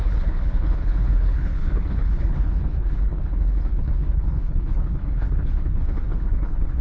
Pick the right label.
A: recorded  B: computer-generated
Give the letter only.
B